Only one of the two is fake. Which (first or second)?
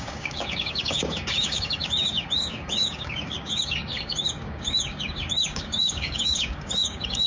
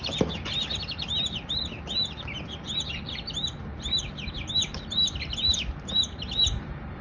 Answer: first